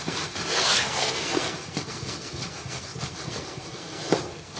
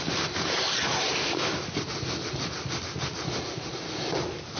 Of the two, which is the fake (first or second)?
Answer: first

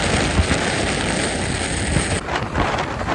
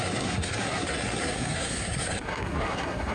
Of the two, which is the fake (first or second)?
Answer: second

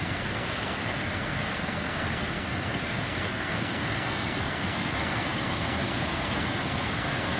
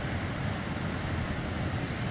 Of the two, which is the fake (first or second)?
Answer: first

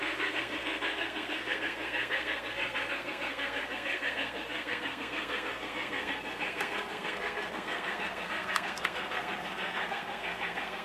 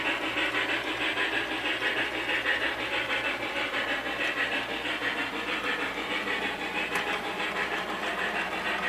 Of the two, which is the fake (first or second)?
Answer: first